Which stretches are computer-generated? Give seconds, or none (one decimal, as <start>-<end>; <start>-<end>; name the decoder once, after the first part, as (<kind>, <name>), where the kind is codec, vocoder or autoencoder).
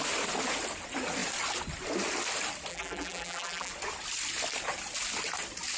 2.7-3.7 (vocoder, BigVGAN v2)